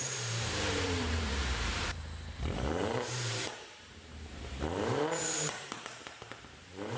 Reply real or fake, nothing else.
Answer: fake